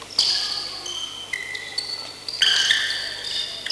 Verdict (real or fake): real